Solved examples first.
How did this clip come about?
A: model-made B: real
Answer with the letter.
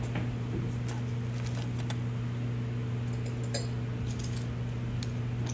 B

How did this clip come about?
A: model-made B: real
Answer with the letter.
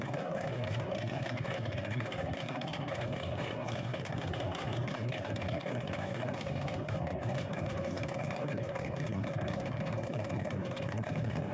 A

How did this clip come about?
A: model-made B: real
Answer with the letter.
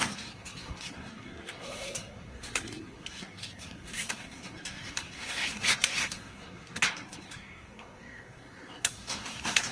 A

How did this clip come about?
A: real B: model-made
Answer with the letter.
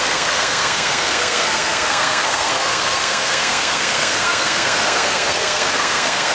B